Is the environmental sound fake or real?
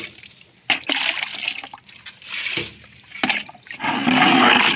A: real